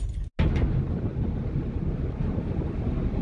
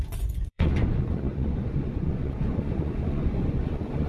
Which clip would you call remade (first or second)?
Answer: second